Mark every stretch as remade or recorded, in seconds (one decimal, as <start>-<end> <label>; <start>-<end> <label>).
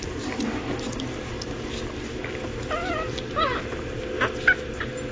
0.0-5.1 recorded